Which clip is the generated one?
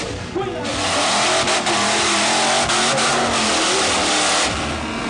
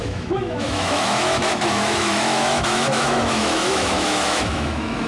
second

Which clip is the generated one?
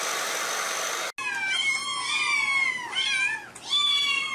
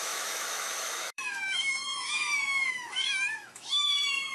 second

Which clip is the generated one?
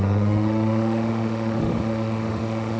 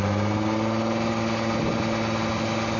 first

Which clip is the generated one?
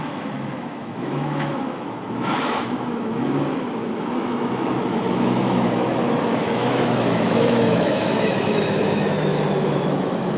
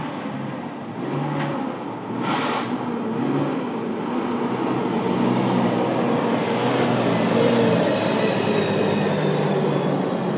first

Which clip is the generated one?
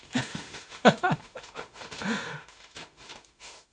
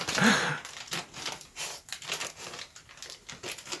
first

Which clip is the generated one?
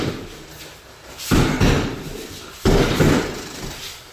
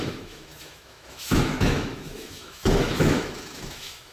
second